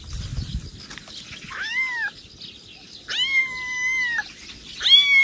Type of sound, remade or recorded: recorded